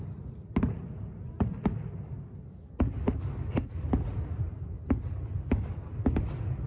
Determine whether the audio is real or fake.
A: real